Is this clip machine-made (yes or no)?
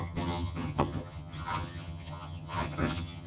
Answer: yes